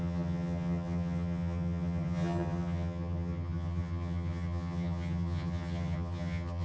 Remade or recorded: remade